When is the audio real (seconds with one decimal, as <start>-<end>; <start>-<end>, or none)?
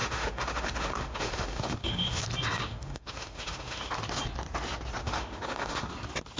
2.2-2.6; 3.9-5.0; 5.9-6.4